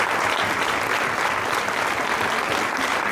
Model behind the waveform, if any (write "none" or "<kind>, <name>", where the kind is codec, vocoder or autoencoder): none